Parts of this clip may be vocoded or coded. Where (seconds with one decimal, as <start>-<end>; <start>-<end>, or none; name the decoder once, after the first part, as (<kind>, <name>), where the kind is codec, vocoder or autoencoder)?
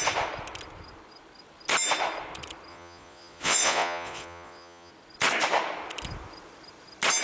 2.7-4.9 (vocoder, Vocos)